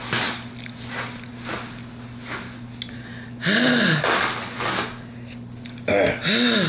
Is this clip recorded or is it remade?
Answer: recorded